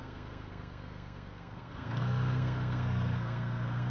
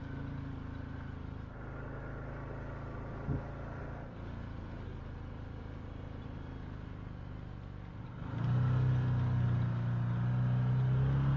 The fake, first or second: first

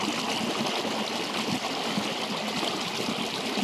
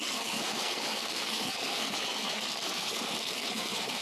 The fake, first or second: second